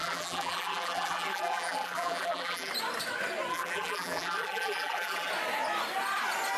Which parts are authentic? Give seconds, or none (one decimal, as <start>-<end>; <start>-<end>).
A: 2.7-3.5; 5.3-6.6